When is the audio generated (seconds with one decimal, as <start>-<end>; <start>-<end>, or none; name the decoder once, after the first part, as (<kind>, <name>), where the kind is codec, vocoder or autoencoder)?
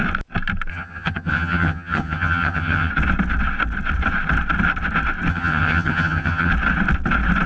0.7-2.9 (vocoder, HiFi-GAN); 5.3-6.5